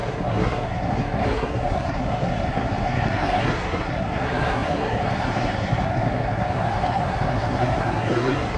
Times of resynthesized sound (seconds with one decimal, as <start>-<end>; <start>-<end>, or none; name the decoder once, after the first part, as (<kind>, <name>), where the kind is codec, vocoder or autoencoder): 0.0-8.6 (codec, SNAC)